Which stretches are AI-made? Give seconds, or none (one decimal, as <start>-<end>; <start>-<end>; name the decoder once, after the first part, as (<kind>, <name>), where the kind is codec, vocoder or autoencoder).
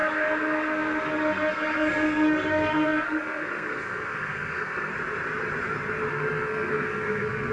0.0-4.9 (codec, SNAC); 6.1-7.5